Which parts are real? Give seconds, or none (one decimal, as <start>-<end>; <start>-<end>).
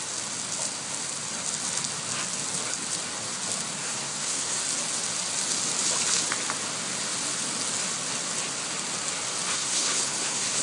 0.0-3.8; 4.6-9.5